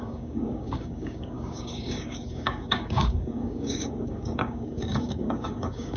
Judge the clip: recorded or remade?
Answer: remade